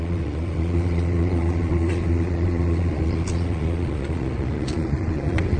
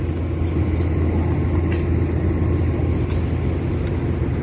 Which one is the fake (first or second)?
first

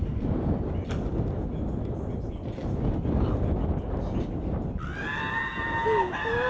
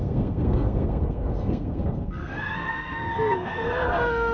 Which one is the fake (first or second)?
second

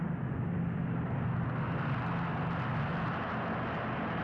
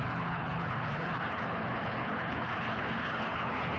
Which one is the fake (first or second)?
second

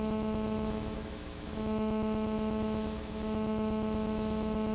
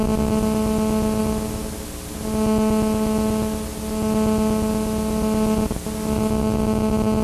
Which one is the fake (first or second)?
first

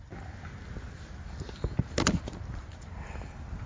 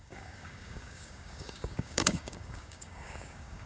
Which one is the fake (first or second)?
second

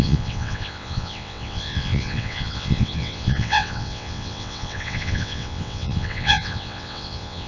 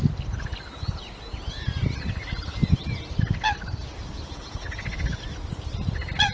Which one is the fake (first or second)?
first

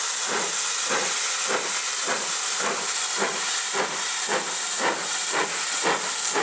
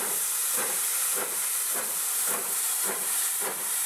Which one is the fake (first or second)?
second